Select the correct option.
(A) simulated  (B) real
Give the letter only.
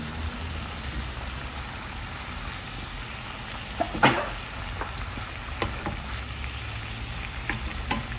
B